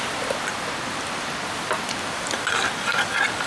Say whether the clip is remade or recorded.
recorded